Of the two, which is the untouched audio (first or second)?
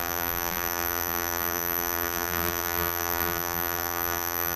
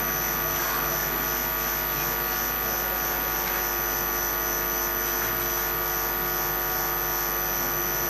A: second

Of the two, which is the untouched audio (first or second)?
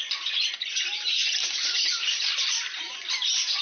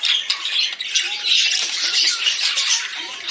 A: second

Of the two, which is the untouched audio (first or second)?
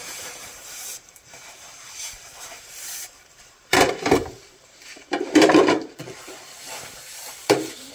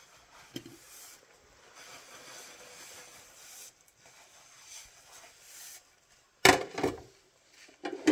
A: second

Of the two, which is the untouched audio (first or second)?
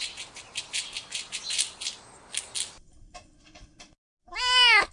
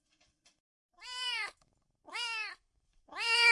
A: first